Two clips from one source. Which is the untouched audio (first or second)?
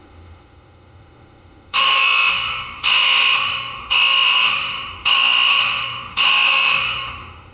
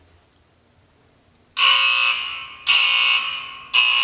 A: second